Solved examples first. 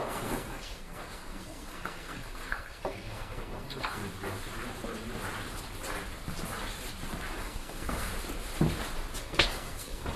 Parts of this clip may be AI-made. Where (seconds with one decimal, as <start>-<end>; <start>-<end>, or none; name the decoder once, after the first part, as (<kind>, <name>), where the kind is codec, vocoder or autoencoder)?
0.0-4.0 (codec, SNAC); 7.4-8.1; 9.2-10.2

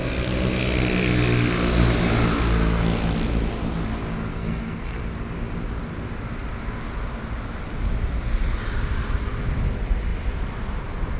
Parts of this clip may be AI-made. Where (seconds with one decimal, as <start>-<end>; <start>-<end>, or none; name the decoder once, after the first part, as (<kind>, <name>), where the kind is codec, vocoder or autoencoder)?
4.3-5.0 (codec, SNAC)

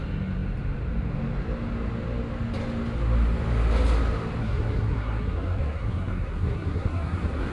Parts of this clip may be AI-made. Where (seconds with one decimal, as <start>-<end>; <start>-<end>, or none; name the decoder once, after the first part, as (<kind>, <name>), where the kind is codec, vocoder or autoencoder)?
4.4-7.5 (codec, SNAC)

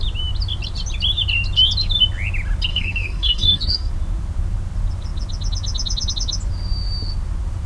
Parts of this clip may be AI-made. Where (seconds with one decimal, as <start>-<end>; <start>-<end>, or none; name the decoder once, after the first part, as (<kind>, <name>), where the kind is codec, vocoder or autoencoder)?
2.7-3.9 (codec, SNAC)

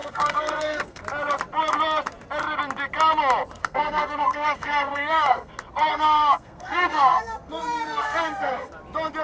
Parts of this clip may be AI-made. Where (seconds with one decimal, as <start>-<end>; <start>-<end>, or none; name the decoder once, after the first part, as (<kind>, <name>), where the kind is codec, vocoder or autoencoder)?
0.0-1.0 (codec, SNAC); 3.6-5.5; 5.9-8.7

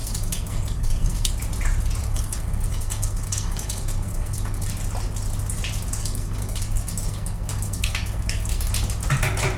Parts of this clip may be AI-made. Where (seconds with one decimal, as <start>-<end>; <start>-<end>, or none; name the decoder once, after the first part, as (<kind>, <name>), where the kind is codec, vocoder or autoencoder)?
0.0-1.3 (codec, SNAC); 2.0-4.7; 6.0-8.7

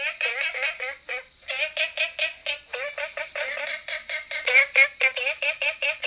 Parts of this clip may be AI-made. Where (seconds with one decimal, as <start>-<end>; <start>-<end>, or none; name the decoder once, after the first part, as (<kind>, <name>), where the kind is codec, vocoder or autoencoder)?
none

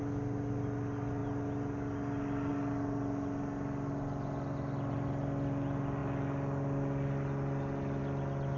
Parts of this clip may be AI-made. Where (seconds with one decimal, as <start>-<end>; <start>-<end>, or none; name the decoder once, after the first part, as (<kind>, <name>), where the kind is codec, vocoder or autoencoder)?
none